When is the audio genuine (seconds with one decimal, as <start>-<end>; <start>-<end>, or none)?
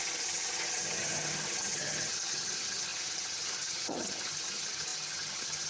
none